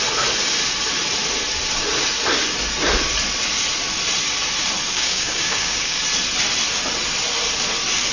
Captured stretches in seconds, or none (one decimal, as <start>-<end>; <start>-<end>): 0.0-4.9; 6.0-8.1